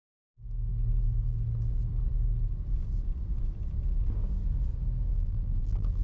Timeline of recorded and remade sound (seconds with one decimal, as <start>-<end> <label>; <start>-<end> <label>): 0.0-5.1 recorded; 5.1-6.0 remade